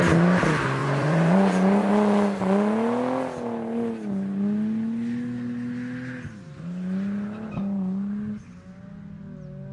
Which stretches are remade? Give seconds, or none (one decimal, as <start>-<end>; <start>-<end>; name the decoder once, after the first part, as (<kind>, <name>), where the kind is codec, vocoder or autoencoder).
0.8-1.9 (vocoder, Vocos)